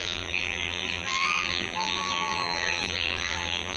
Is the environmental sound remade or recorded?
remade